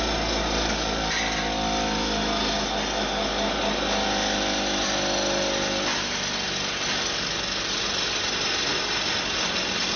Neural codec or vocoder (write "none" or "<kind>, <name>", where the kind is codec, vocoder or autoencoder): none